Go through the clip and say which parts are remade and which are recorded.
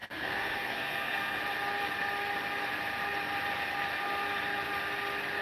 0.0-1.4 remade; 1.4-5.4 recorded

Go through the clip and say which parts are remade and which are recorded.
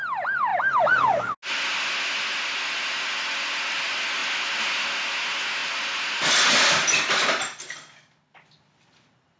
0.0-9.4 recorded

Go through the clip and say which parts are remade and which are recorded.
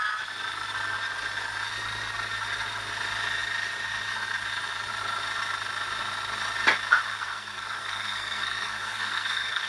0.0-7.1 recorded; 7.1-9.7 remade